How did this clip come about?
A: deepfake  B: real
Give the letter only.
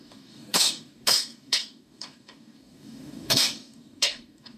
A